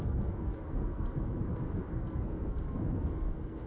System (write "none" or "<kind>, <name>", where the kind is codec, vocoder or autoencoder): codec, SNAC